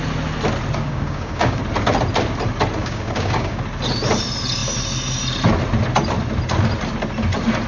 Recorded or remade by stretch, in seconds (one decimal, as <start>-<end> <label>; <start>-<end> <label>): 0.0-0.8 recorded; 0.8-1.6 remade; 1.6-2.8 recorded; 2.8-3.6 remade; 3.6-7.7 recorded